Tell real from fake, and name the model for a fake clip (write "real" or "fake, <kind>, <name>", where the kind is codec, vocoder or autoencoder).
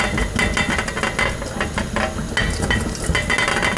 real